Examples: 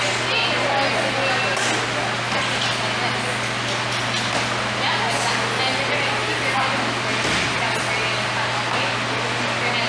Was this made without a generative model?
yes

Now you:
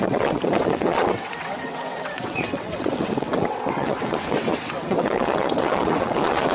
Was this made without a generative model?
no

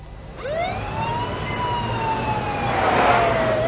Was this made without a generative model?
yes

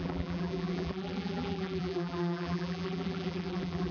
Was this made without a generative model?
no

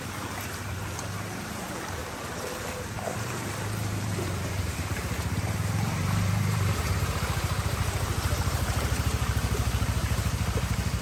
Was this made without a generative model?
no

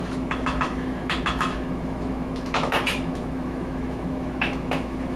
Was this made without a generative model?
no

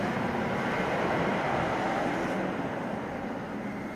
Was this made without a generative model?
no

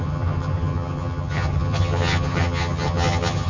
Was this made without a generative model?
no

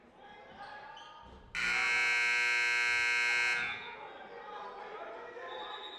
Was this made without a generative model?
yes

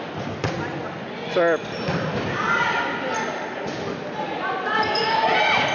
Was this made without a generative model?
yes